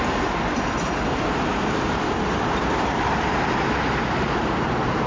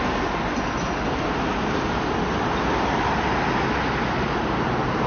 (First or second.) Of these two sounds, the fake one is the first